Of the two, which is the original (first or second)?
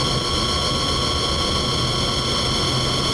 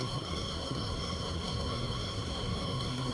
first